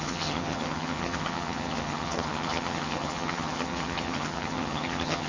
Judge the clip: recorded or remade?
remade